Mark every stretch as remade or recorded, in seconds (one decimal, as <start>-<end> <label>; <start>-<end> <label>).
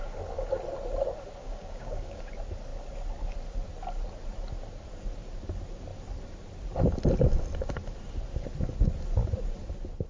0.0-1.4 recorded; 1.4-2.3 remade; 2.3-10.1 recorded